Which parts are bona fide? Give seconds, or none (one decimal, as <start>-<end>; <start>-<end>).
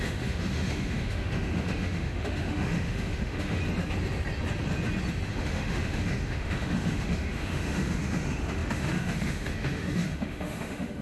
3.6-5.3